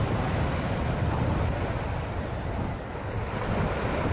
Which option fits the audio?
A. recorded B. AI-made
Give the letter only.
A